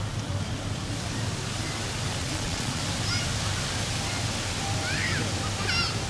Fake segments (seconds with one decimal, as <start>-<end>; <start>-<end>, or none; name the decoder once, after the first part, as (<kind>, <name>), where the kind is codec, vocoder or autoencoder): 2.2-2.8 (vocoder, Vocos)